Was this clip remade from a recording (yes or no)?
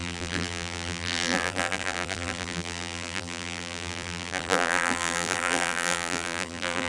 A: yes